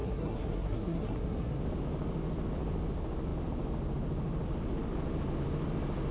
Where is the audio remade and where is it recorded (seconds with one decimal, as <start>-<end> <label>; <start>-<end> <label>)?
0.0-1.6 remade; 1.6-6.1 recorded